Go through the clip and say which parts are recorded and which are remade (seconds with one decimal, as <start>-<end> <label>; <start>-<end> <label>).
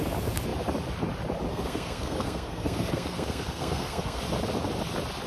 0.0-1.5 recorded; 1.5-4.2 remade; 4.2-5.3 recorded